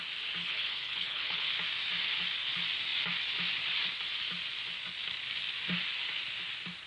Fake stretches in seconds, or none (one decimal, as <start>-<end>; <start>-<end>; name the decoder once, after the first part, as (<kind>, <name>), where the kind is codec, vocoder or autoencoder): 0.4-1.5 (codec, HILCodec)